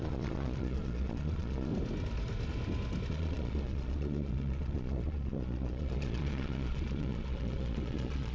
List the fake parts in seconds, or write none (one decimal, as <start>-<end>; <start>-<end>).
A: 0.0-1.7; 3.1-8.3